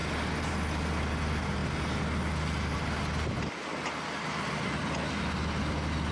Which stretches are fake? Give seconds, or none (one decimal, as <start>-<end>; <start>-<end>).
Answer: none